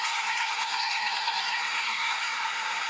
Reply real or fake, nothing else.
fake